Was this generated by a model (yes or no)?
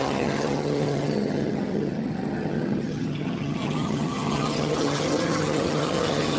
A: yes